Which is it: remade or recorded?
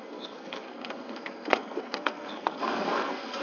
remade